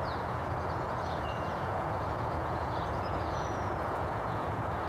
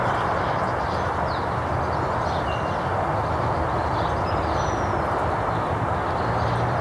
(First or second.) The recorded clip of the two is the second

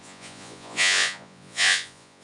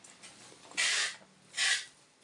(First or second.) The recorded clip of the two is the second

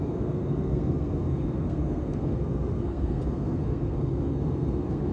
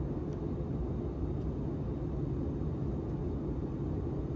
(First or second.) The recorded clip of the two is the second